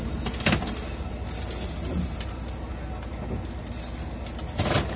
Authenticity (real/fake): real